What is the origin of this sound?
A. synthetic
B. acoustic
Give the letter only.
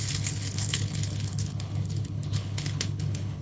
A